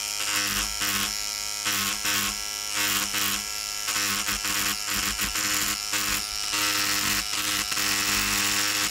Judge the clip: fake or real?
real